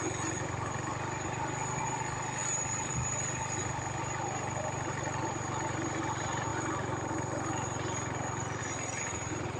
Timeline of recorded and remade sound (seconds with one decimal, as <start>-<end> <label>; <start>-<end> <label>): 0.0-9.6 recorded